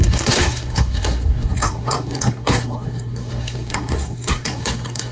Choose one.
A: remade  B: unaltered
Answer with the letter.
A